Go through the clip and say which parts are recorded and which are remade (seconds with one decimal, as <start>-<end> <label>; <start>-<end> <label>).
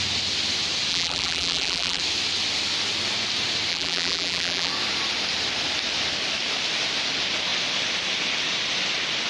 0.0-0.9 recorded; 0.9-2.0 remade; 2.0-3.7 recorded; 3.7-4.7 remade; 4.7-9.3 recorded